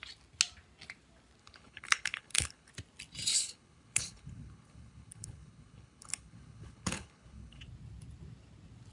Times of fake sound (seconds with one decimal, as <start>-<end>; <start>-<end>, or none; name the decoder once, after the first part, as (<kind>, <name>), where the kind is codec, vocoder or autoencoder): 1.4-2.7 (codec, HILCodec); 3.3-7.6